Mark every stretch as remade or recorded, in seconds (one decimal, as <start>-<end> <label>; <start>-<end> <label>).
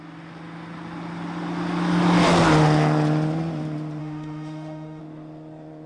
0.0-4.0 recorded; 4.0-5.0 remade; 5.0-5.9 recorded